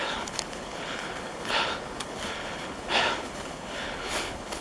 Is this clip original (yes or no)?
no